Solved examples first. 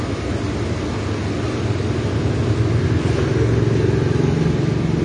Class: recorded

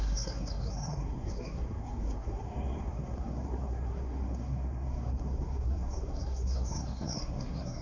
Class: remade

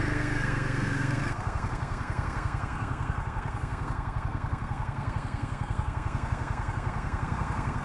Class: remade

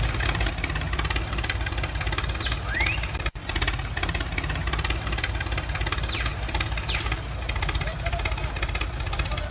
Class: recorded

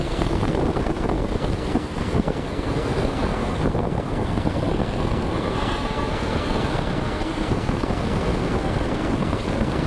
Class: remade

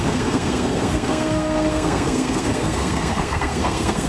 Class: remade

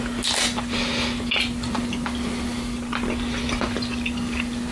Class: recorded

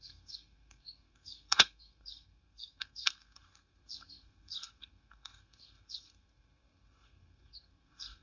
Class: remade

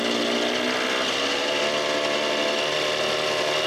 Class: recorded